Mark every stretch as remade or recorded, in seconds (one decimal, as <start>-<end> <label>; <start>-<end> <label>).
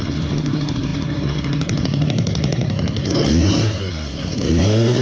0.0-5.0 remade